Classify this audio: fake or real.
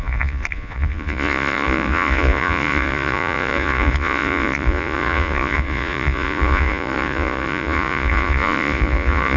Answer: fake